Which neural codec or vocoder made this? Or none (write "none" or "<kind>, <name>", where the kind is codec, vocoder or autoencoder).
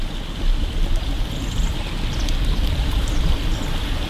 none